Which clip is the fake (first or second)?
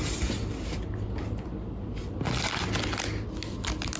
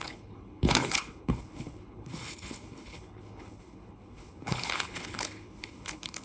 second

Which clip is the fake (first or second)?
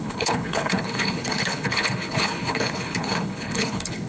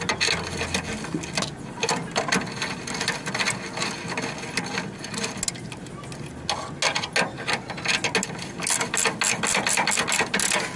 first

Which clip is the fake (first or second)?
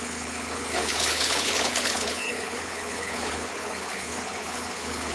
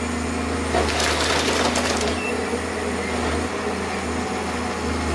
first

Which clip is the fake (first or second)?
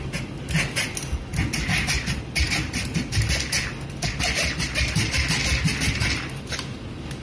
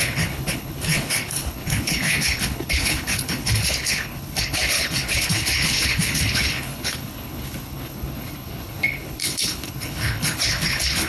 second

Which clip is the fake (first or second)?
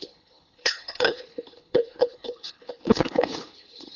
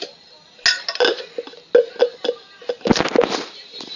first